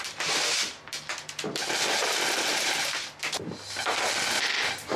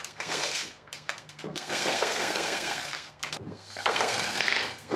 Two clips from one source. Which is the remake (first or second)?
second